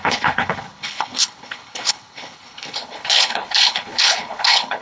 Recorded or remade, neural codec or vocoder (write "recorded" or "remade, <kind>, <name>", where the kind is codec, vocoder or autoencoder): remade, codec, HILCodec